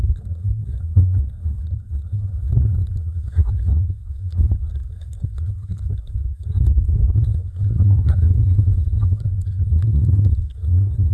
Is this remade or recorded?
remade